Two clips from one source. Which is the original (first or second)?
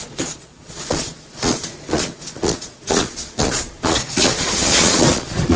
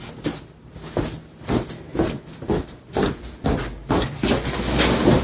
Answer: second